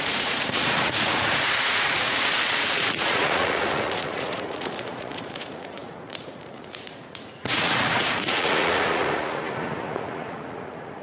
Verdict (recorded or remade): remade